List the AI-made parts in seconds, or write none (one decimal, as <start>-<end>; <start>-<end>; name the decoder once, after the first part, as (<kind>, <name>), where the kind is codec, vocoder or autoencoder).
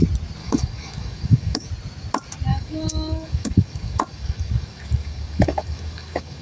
0.4-1.7 (codec, DAC); 2.5-6.4